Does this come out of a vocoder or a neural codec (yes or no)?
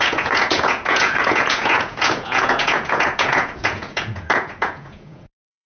yes